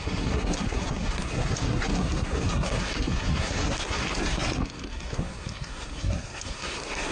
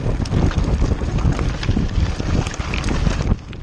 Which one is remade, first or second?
first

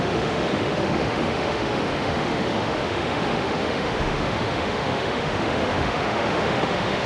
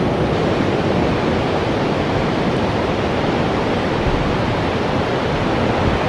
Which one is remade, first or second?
first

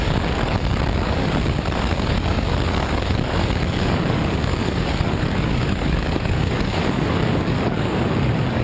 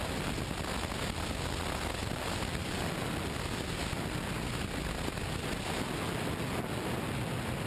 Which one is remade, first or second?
first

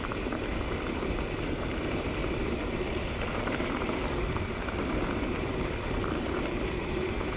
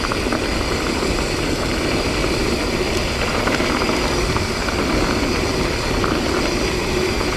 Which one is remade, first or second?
first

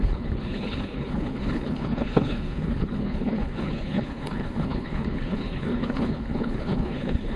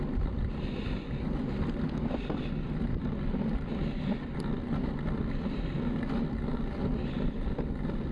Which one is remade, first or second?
first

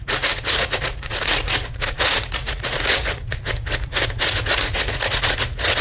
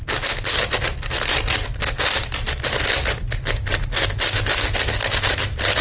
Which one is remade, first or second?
first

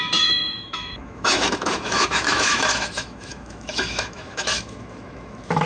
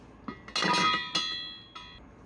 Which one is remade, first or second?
first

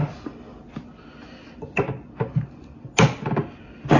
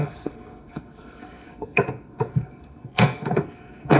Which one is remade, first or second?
second